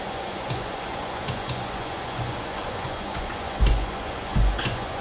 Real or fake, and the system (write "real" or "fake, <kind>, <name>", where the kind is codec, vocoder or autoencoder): fake, vocoder, Vocos